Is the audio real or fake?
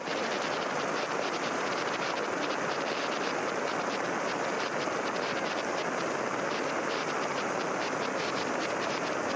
real